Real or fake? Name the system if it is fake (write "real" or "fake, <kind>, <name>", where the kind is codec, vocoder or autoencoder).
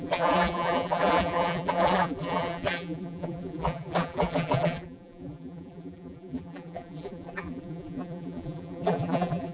fake, vocoder, BigVGAN v2